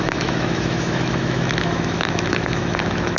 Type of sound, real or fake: fake